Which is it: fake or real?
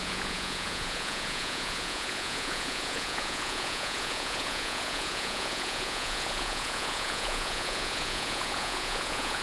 fake